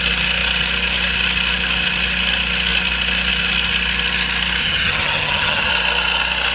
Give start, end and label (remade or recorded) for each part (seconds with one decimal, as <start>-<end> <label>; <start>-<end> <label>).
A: 0.0-4.6 recorded; 4.6-5.7 remade; 5.7-6.5 recorded